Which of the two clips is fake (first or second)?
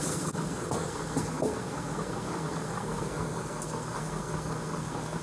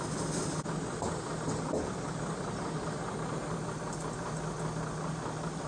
first